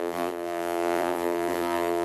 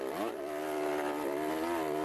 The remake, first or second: first